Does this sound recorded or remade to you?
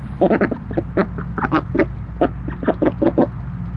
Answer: recorded